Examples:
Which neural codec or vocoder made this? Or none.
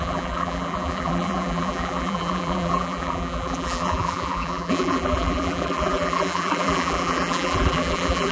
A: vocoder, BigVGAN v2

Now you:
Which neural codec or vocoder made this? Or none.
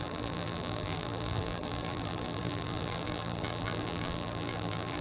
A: vocoder, BigVGAN v2